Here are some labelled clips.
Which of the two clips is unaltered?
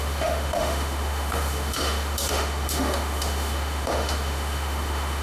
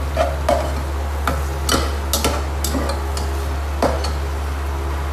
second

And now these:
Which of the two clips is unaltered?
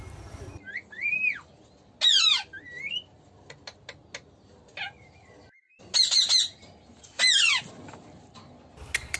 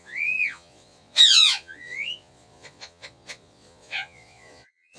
first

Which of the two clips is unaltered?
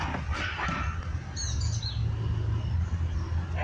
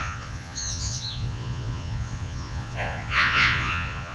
first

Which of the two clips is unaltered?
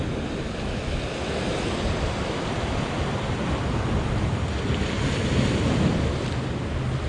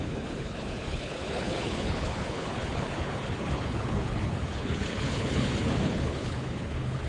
first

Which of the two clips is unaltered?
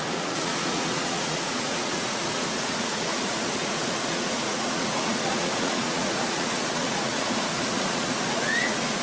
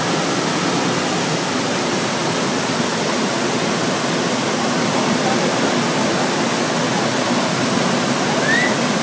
second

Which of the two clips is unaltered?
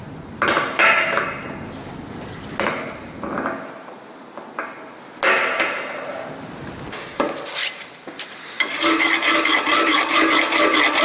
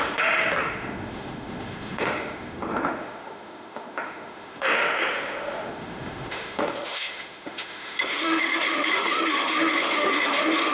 first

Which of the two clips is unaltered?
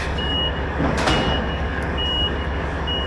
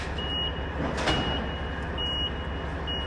second